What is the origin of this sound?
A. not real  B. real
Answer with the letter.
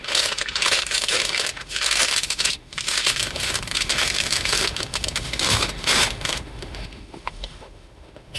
A